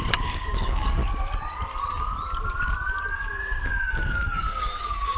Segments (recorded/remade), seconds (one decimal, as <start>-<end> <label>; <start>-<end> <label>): 0.0-1.0 remade; 1.0-3.1 recorded; 3.1-5.2 remade